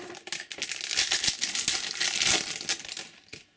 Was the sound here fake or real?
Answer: real